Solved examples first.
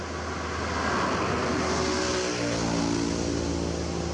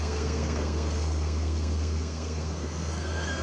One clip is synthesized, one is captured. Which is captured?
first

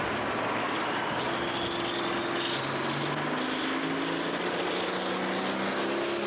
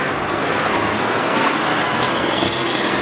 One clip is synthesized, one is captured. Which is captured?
first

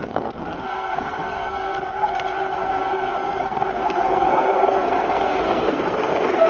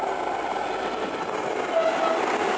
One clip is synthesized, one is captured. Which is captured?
second